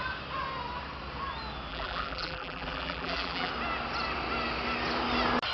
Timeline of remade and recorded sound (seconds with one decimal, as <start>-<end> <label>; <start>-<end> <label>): 0.0-1.7 recorded; 1.7-3.5 remade; 3.5-5.5 recorded